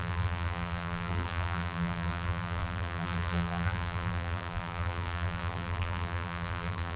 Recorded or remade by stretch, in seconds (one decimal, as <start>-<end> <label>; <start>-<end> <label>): 0.0-7.0 remade